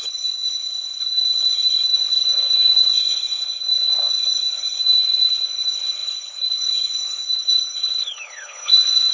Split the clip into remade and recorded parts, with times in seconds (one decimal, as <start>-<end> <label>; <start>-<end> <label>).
0.0-9.1 remade